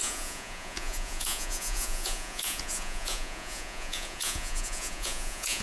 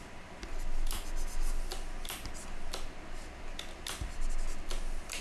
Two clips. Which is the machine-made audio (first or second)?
first